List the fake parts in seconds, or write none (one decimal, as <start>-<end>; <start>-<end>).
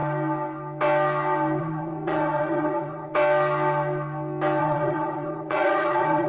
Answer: 1.6-3.1; 4.6-6.3